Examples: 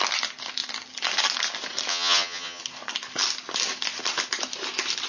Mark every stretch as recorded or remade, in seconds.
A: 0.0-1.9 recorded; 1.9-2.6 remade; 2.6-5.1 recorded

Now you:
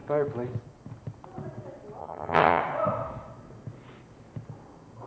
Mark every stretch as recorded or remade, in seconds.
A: 0.0-2.0 recorded; 2.0-2.6 remade; 2.6-5.1 recorded

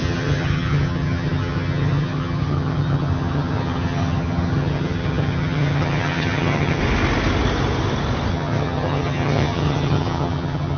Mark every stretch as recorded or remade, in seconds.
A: 0.0-6.8 remade; 6.8-8.3 recorded; 8.3-10.8 remade